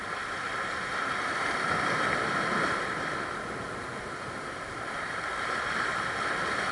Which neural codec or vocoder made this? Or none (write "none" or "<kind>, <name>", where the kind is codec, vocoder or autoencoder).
none